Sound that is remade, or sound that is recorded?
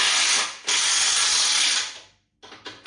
recorded